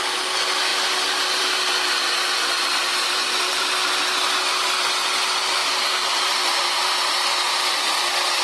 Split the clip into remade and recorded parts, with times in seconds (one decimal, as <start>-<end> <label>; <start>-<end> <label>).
0.0-2.9 recorded; 2.9-3.6 remade; 3.6-5.6 recorded; 5.6-7.1 remade; 7.1-7.5 recorded; 7.5-8.4 remade